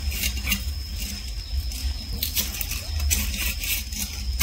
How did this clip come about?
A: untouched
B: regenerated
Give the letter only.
A